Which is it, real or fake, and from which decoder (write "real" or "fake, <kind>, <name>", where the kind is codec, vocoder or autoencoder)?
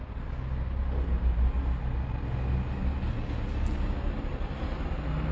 real